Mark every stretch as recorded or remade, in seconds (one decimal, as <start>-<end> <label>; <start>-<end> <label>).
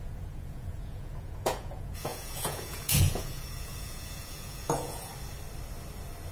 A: 0.0-5.1 remade; 5.1-6.3 recorded